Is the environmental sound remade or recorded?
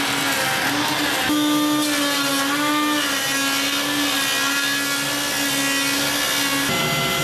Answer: recorded